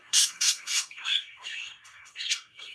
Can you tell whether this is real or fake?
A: fake